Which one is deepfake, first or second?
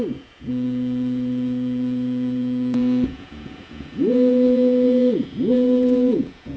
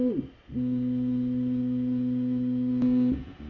first